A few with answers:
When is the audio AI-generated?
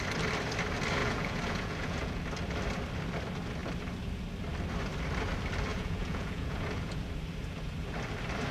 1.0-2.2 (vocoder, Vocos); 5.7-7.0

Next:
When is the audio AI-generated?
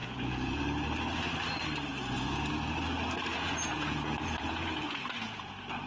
0.0-0.6 (vocoder, Vocos); 1.9-2.5; 3.3-5.5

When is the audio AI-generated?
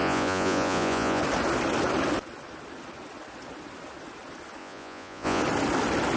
0.0-1.2 (vocoder, Vocos); 4.6-5.4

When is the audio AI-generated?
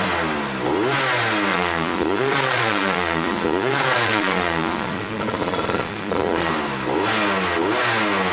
1.5-6.5 (vocoder, Vocos)